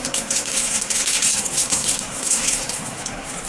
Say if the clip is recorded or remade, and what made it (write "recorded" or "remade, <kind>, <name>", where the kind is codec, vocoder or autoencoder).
remade, codec, SNAC